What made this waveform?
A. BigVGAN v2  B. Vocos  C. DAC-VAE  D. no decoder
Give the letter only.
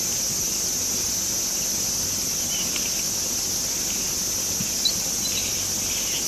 D